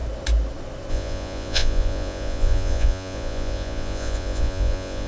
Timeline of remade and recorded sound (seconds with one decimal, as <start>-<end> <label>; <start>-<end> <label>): 0.0-0.9 recorded; 0.9-5.1 remade